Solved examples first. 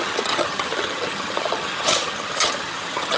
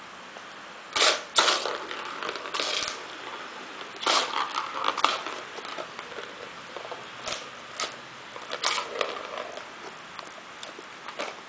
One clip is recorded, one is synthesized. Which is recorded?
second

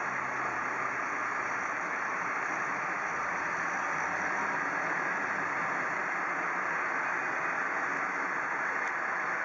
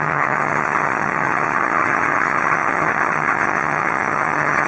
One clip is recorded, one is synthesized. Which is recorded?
first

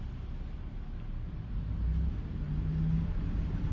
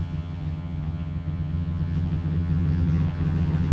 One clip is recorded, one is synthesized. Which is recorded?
first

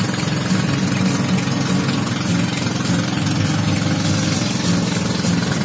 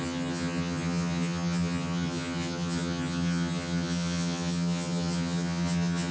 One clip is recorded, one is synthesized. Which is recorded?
first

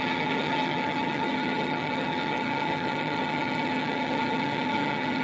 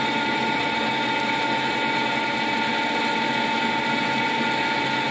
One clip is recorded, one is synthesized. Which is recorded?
second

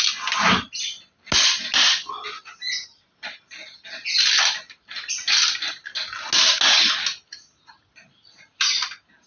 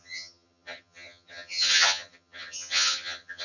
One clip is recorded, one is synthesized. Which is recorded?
first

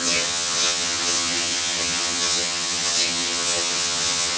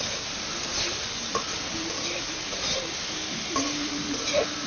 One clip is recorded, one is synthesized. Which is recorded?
second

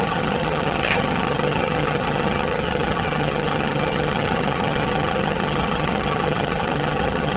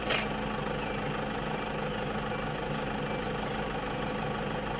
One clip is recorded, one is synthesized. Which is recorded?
second